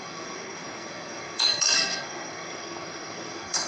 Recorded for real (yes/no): no